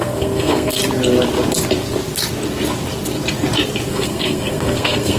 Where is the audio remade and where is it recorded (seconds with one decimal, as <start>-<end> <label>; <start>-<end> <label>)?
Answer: 0.0-0.8 remade; 0.8-3.9 recorded; 3.9-5.2 remade